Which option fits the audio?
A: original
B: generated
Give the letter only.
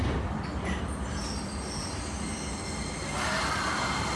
A